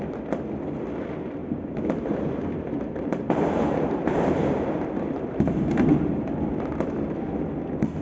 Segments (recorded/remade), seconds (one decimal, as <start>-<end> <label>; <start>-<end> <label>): 0.0-1.4 recorded; 1.4-6.1 remade; 6.1-8.0 recorded